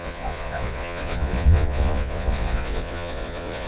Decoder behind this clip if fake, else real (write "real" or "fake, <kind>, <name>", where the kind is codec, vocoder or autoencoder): fake, vocoder, Vocos